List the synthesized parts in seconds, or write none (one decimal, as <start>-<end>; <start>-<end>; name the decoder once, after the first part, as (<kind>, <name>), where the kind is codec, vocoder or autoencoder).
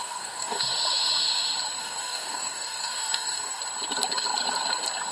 0.0-0.6 (codec, DAC); 1.8-3.6